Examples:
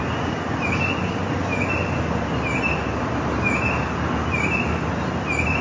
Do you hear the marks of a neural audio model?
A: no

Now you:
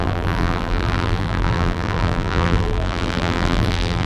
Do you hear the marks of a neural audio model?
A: yes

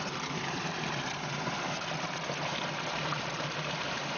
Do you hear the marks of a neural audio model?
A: yes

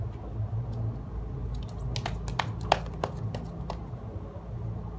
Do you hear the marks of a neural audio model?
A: no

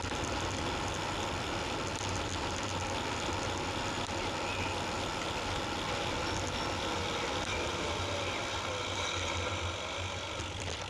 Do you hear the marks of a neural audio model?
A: no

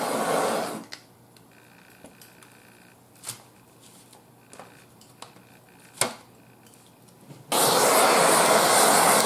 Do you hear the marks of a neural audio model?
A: no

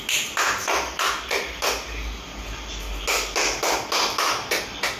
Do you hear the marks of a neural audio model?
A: no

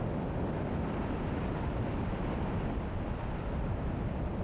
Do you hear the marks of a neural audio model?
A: no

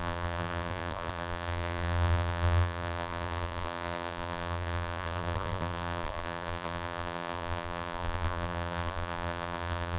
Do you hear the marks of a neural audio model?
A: yes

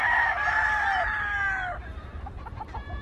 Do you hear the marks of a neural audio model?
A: yes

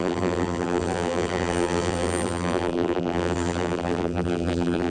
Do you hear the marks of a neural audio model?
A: yes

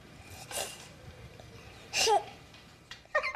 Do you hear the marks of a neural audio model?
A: yes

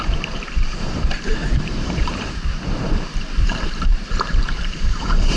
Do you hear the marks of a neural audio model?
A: yes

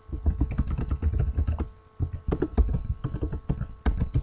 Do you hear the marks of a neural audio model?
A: no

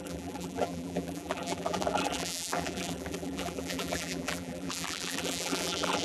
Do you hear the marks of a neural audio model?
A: yes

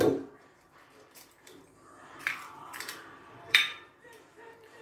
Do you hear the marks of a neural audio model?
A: yes